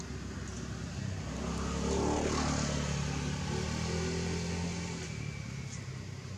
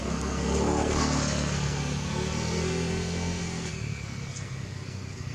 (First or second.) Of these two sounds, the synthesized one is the second